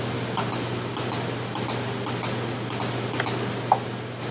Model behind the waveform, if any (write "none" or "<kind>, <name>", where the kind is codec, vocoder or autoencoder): none